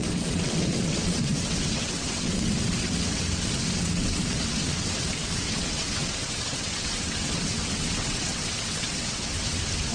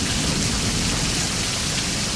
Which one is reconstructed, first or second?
first